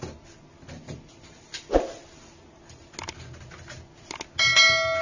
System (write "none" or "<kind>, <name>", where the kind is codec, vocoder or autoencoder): none